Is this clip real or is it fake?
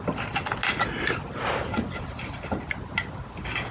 real